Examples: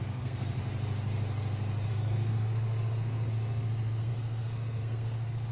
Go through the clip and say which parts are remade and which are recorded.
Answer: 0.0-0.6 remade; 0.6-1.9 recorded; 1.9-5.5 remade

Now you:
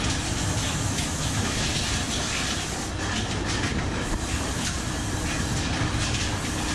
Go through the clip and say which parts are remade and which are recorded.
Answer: 0.0-0.7 recorded; 0.7-1.6 remade; 1.6-6.7 recorded

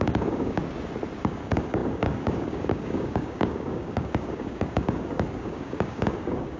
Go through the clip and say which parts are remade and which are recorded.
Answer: 0.0-0.6 remade; 0.6-1.2 recorded; 1.2-6.6 remade

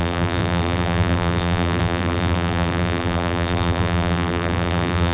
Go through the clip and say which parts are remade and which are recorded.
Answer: 0.0-5.1 remade